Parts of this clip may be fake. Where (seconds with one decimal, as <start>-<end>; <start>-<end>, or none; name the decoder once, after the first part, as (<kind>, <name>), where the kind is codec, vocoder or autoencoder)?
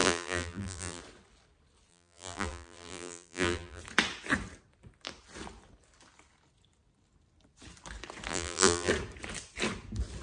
0.0-1.0 (vocoder, BigVGAN v2); 1.9-3.8; 8.3-8.9